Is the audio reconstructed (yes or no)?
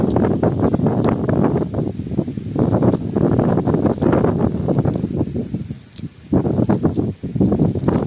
no